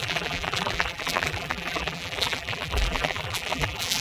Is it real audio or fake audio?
fake